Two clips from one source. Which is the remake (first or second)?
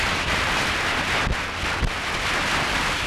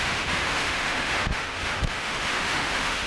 second